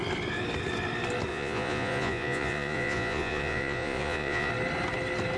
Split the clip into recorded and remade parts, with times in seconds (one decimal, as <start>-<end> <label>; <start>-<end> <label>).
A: 0.0-1.3 recorded; 1.3-4.5 remade; 4.5-5.4 recorded